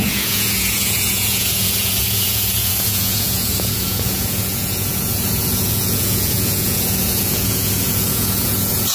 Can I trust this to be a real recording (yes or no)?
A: no